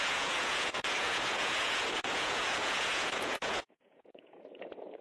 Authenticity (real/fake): fake